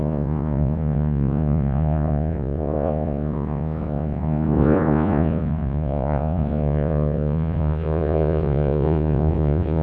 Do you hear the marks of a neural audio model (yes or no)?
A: yes